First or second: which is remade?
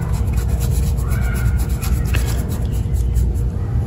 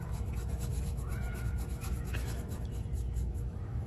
second